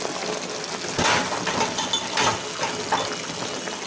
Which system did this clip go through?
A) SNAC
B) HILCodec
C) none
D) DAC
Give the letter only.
C